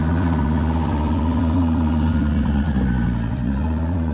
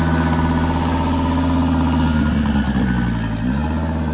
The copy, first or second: first